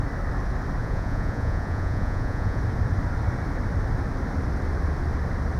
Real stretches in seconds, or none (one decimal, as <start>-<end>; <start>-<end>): 0.0-0.8; 2.6-5.6